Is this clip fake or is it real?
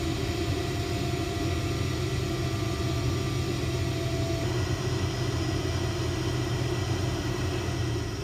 real